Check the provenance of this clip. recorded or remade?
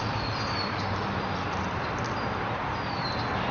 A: recorded